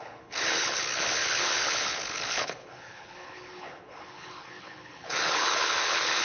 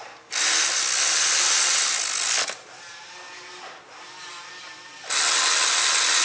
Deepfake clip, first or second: first